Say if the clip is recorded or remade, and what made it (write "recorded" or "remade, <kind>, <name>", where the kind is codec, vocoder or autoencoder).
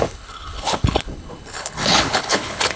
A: remade, codec, HILCodec